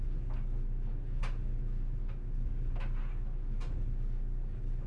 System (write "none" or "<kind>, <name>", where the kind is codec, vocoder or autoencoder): none